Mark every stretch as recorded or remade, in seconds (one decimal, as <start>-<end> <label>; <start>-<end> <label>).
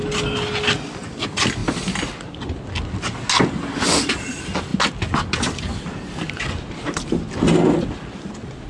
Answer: 0.0-8.7 recorded